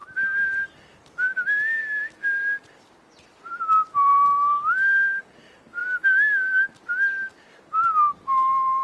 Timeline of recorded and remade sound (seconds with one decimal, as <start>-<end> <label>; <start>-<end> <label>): 0.0-8.8 recorded